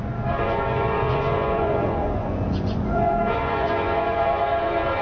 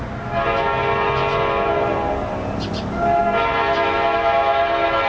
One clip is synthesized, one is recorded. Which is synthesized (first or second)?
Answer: first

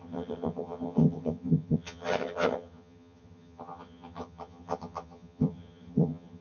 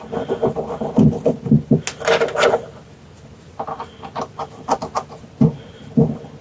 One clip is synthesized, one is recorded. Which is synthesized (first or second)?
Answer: first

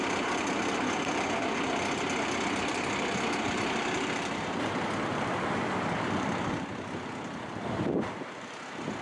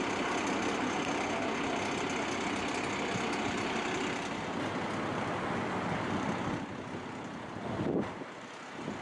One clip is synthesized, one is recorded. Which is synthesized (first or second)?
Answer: first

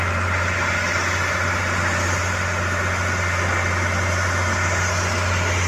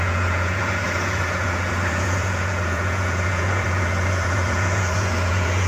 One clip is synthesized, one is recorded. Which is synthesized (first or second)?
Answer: second